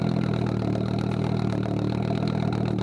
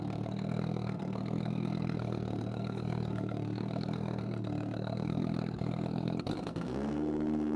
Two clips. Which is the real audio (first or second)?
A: first